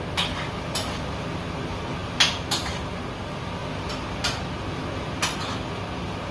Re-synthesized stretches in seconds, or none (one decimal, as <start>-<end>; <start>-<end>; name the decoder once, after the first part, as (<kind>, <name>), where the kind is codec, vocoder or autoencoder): none